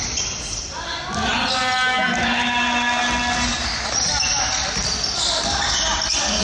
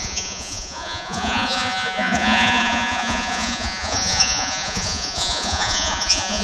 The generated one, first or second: second